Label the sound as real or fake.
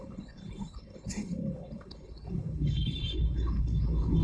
fake